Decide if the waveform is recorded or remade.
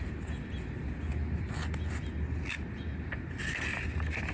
recorded